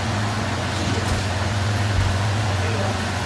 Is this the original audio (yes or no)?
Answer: no